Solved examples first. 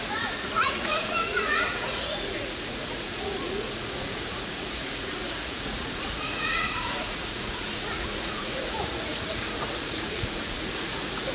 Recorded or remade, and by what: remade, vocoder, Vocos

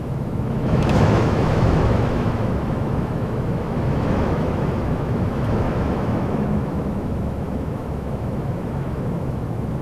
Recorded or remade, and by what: remade, autoencoder, DAC-VAE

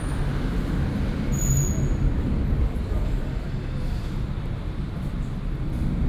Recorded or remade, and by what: recorded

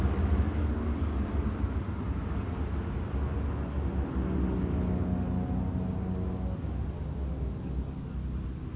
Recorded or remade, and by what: recorded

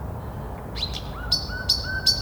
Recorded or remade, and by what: recorded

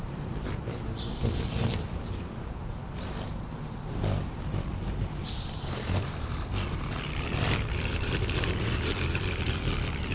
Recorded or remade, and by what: remade, vocoder, BigVGAN v2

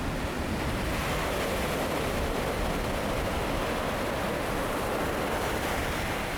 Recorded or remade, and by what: recorded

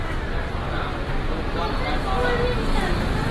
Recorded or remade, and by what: recorded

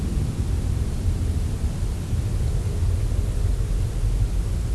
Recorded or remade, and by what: recorded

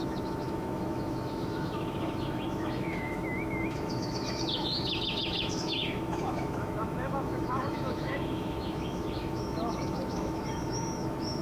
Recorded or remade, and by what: remade, autoencoder, DAC-VAE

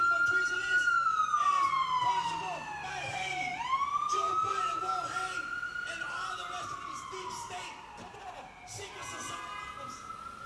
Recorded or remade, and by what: recorded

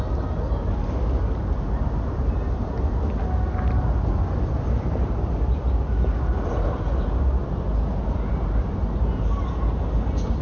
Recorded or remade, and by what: recorded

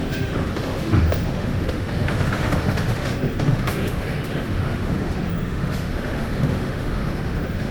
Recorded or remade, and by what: remade, autoencoder, DAC-VAE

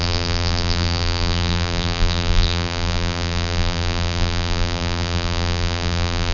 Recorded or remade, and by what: remade, vocoder, BigVGAN v2